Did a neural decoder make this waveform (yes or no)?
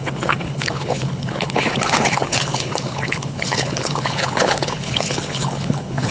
yes